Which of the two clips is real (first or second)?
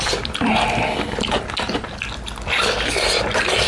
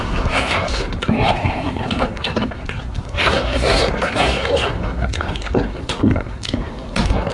first